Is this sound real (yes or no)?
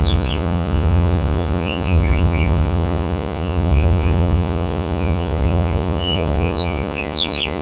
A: no